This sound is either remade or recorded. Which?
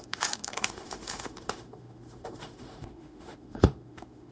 remade